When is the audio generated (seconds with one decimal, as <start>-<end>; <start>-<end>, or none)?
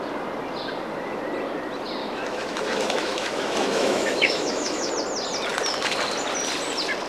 2.0-4.9